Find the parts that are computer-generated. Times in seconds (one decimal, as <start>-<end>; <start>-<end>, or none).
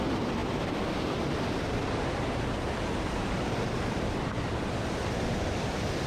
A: none